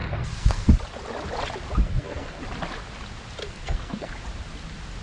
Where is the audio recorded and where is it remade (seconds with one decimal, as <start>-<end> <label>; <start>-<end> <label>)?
0.0-0.7 remade; 0.7-1.8 recorded; 1.8-2.4 remade; 2.4-3.4 recorded; 3.4-4.1 remade; 4.1-5.0 recorded